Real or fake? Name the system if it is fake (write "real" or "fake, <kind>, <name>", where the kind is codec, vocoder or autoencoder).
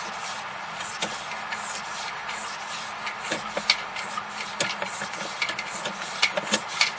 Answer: real